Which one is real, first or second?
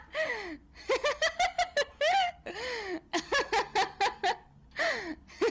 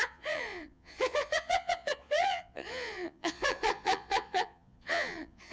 first